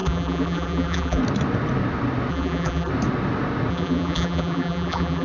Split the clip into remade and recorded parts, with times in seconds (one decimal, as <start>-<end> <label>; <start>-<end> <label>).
0.0-1.2 remade; 1.2-2.3 recorded; 2.3-2.9 remade; 2.9-3.7 recorded; 3.7-5.2 remade